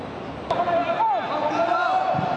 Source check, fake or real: real